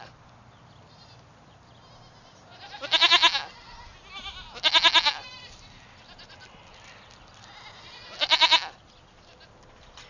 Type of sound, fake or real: real